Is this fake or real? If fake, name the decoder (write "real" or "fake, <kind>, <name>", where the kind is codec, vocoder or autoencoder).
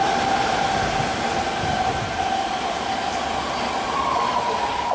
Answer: real